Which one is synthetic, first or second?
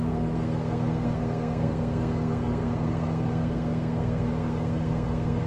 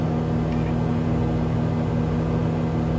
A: first